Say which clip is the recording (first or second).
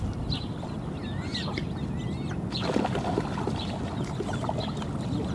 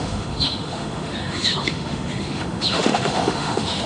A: first